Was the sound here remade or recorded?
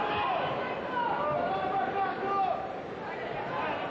recorded